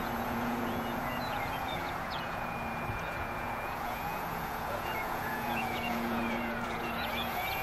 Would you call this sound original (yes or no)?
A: no